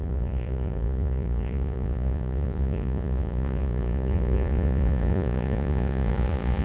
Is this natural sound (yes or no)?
no